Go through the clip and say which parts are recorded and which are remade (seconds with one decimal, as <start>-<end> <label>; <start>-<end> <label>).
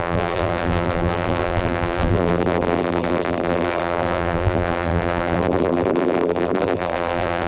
0.0-7.5 remade